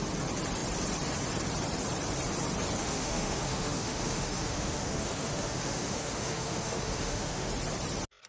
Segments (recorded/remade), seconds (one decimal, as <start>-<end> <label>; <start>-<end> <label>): 0.0-2.8 recorded; 2.8-7.5 remade; 7.5-8.3 recorded